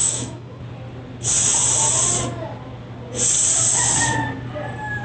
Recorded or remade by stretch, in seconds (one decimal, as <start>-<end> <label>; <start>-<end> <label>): 0.0-0.6 remade; 0.6-5.0 recorded

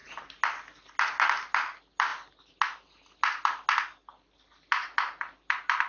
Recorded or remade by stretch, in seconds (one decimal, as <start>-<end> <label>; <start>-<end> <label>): 0.0-5.9 recorded

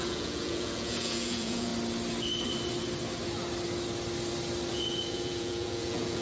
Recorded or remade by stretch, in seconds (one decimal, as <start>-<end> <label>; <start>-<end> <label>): 0.0-1.7 remade; 1.7-4.7 recorded; 4.7-6.2 remade